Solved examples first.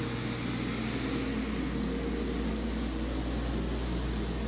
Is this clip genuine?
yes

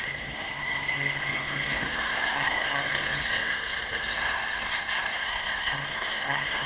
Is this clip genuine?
no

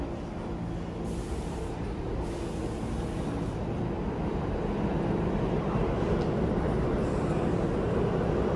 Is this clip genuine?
yes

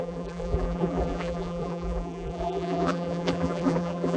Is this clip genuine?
no